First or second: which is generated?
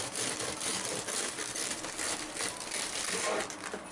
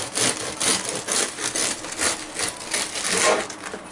first